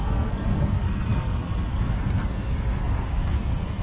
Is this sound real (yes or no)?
no